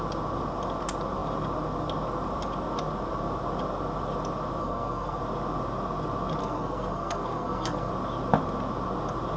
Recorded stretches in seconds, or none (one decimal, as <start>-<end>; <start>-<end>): 0.0-4.6; 5.2-6.4; 7.9-9.4